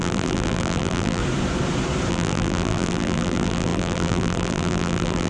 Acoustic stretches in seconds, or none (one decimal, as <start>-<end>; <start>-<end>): 1.2-2.1